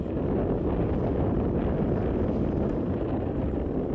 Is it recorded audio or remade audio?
recorded